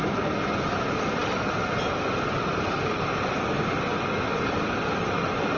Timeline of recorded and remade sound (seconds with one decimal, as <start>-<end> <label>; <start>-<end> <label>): 0.0-5.6 recorded